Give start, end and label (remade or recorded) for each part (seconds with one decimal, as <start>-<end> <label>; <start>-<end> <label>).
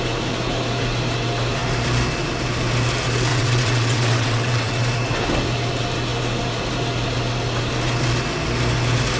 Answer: 0.0-3.3 recorded; 3.3-4.8 remade; 4.8-9.2 recorded